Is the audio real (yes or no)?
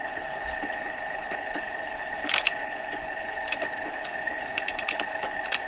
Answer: no